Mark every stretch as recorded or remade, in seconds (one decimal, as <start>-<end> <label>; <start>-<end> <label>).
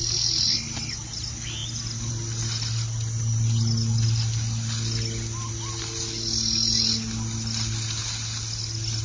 0.0-9.0 recorded